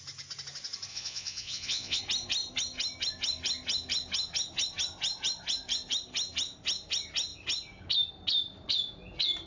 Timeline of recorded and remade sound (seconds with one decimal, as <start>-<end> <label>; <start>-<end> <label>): 0.0-0.9 recorded; 0.9-2.0 remade; 2.0-9.5 recorded